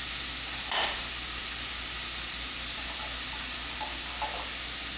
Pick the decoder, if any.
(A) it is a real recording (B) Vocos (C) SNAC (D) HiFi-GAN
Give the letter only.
A